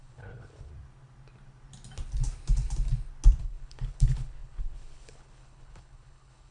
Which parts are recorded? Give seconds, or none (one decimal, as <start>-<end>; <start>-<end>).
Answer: 0.7-3.4